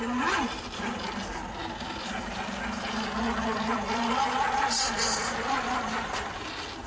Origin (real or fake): real